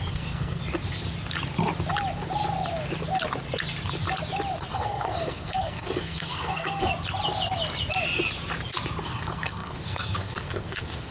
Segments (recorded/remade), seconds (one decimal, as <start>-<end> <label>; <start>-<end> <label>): 0.0-0.6 remade; 0.6-4.7 recorded; 4.7-6.9 remade; 6.9-9.0 recorded; 9.0-11.1 remade

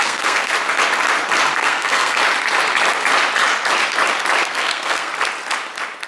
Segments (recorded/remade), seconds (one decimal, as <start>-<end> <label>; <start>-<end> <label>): 0.0-0.5 remade; 0.5-1.5 recorded; 1.5-2.2 remade; 2.2-4.4 recorded; 4.4-5.1 remade; 5.1-6.1 recorded

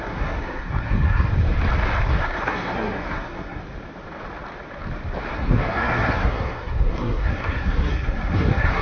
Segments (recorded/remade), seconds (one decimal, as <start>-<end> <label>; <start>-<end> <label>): 0.0-1.3 remade; 1.3-2.1 recorded; 2.1-3.6 remade; 3.6-5.3 recorded; 5.3-8.8 remade

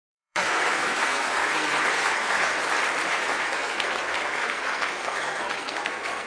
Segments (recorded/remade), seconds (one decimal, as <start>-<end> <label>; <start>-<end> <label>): 0.0-2.6 remade; 2.6-3.1 recorded; 3.1-6.3 remade

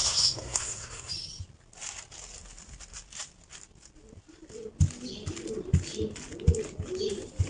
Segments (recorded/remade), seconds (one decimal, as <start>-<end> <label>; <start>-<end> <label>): 0.0-1.1 remade; 1.1-7.5 recorded

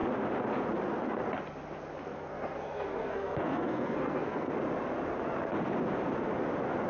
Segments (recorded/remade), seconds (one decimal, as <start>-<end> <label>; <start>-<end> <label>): 0.0-2.0 recorded; 2.0-4.5 remade; 4.5-6.9 recorded

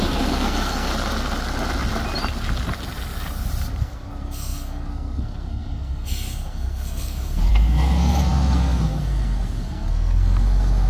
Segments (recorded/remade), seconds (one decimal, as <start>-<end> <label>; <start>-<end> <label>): 0.0-0.9 remade; 0.9-3.8 recorded; 3.8-10.9 remade